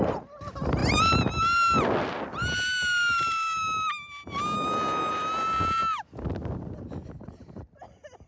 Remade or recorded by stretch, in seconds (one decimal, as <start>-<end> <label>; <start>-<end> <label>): 0.0-8.3 recorded